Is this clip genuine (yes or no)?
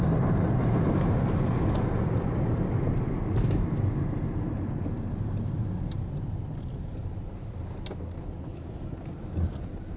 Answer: yes